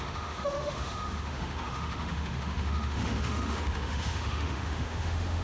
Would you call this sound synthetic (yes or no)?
yes